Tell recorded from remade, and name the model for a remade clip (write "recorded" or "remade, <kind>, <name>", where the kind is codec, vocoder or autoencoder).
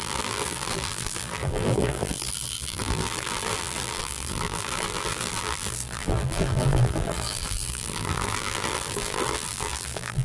remade, vocoder, BigVGAN v2